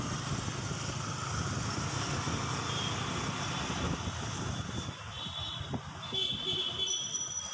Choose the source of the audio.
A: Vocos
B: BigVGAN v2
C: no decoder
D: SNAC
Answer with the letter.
C